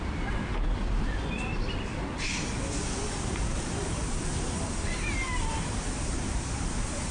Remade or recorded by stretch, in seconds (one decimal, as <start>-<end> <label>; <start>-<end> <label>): 0.0-7.1 remade